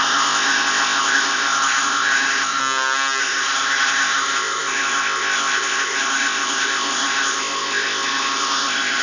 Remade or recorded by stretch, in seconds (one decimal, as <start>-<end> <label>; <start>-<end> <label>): 0.0-2.6 remade; 2.6-3.2 recorded; 3.2-9.0 remade